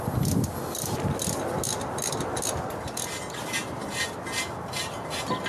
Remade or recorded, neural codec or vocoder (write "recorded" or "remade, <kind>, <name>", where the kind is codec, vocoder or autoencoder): recorded